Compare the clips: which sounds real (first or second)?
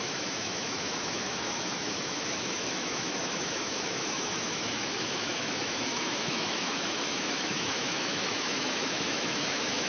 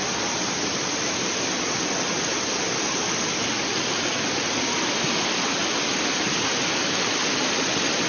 second